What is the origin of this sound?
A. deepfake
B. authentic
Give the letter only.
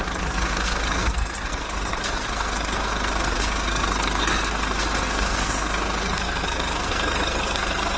A